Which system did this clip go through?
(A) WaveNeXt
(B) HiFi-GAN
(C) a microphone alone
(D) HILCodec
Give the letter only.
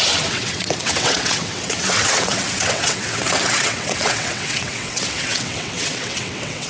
A